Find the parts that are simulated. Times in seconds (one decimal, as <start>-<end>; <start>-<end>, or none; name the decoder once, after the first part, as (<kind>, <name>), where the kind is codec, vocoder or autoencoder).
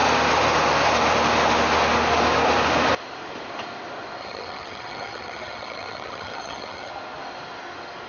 4.2-6.9 (vocoder, HiFi-GAN)